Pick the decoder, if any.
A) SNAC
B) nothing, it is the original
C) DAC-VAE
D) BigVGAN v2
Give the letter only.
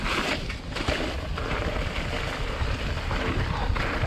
D